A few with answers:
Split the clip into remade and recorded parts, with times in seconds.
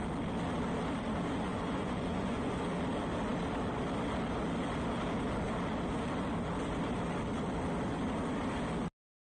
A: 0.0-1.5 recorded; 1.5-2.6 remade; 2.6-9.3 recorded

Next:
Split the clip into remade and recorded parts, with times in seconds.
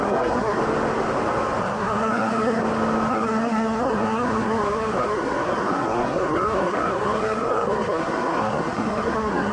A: 0.0-0.6 remade; 0.6-1.6 recorded; 1.6-2.6 remade; 2.6-3.1 recorded; 3.1-9.5 remade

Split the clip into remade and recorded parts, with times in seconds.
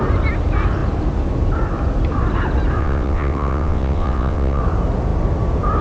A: 0.0-2.8 recorded; 2.8-4.6 remade; 4.6-5.8 recorded